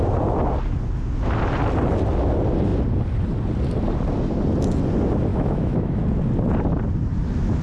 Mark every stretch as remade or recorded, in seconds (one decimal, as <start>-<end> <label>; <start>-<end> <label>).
0.0-5.3 recorded; 5.3-6.0 remade; 6.0-7.6 recorded

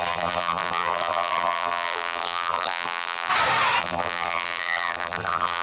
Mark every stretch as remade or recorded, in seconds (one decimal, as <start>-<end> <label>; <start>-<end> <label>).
0.0-3.3 remade; 3.3-3.8 recorded; 3.8-5.6 remade

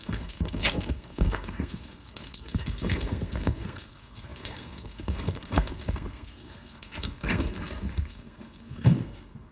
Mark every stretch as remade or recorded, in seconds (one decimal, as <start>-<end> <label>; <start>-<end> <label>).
0.0-9.5 remade

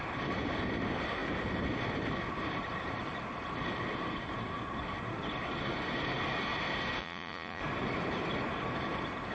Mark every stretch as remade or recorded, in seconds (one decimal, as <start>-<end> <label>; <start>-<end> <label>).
0.0-7.0 recorded; 7.0-7.6 remade; 7.6-9.3 recorded

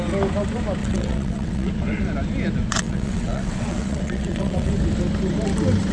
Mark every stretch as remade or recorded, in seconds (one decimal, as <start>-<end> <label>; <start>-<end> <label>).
0.0-0.8 recorded; 0.8-1.7 remade; 1.7-2.7 recorded; 2.7-4.7 remade; 4.7-5.9 recorded

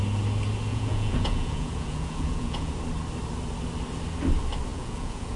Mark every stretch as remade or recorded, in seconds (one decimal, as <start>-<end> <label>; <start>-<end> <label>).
0.0-0.7 recorded; 0.7-2.7 remade; 2.7-4.7 recorded; 4.7-5.4 remade